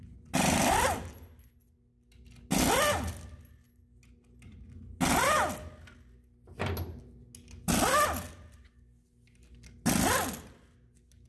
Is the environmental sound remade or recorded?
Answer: recorded